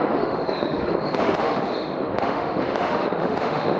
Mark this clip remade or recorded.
remade